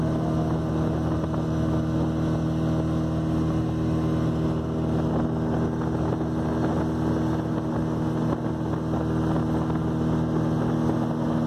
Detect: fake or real real